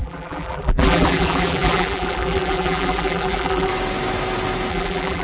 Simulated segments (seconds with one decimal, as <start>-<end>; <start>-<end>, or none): 0.0-3.7; 4.7-5.2